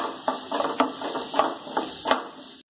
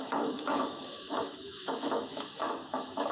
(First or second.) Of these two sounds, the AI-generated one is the second